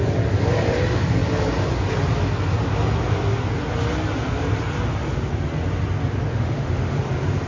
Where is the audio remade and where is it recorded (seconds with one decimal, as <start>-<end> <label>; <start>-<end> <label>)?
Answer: 0.0-6.3 recorded; 6.3-7.0 remade; 7.0-7.5 recorded